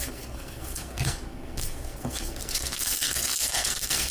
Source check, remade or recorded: remade